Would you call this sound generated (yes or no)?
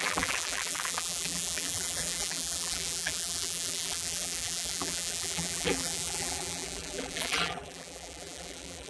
yes